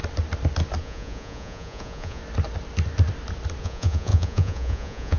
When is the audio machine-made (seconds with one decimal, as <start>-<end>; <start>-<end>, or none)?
0.8-2.2; 3.6-5.2